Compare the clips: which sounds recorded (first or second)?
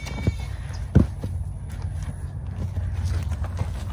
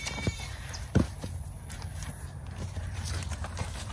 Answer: first